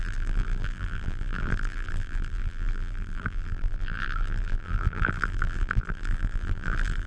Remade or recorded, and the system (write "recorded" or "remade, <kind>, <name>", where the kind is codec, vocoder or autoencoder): remade, vocoder, BigVGAN v2